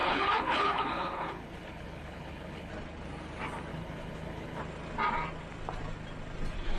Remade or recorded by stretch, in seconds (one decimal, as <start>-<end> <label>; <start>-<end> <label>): 0.0-2.7 remade; 2.7-3.7 recorded; 3.7-4.6 remade; 4.6-6.8 recorded